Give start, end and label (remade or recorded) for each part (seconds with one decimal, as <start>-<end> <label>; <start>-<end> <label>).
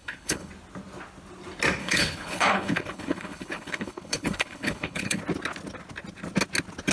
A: 0.0-0.5 remade; 0.5-1.8 recorded; 1.8-5.2 remade; 5.2-6.9 recorded